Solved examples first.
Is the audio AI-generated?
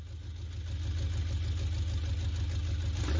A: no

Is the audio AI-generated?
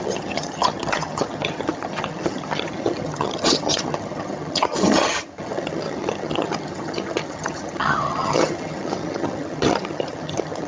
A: yes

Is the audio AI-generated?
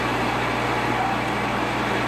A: no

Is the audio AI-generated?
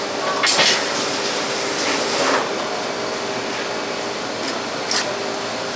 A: no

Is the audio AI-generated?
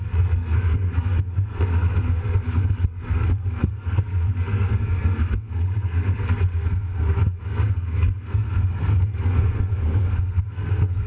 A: yes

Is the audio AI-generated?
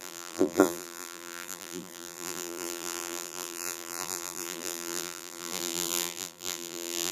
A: yes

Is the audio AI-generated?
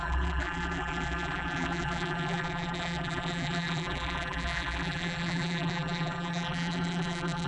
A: yes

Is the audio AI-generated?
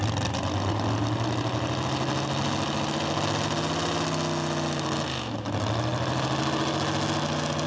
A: no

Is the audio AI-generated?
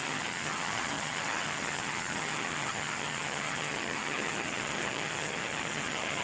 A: yes